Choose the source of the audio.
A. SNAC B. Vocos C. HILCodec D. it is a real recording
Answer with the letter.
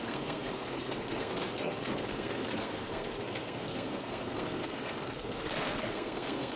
A